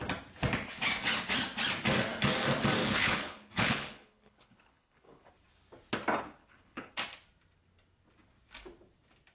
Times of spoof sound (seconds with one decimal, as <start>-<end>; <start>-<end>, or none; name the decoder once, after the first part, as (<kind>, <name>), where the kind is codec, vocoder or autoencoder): 2.8-5.3 (codec, HILCodec); 6.4-6.9